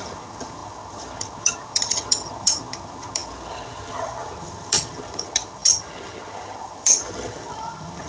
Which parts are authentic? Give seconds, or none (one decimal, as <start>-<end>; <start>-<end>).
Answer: none